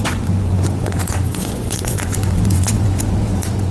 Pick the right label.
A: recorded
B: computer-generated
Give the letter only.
B